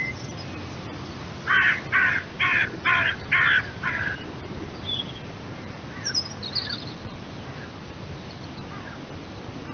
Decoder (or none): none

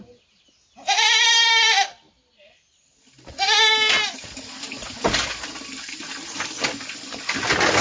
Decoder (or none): none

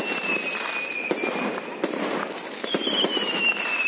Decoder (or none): none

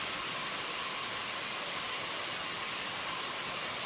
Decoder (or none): none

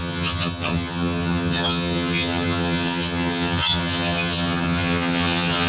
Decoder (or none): vocoder, HiFi-GAN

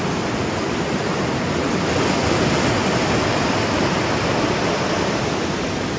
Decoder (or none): none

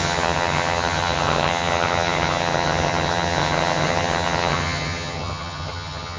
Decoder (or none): vocoder, HiFi-GAN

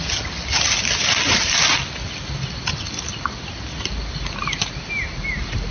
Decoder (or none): none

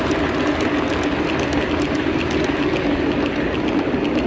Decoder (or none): none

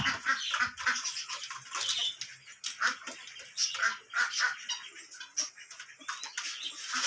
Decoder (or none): none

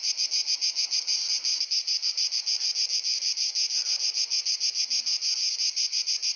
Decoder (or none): none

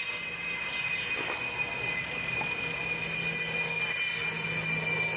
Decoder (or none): none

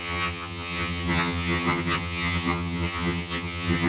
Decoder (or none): vocoder, HiFi-GAN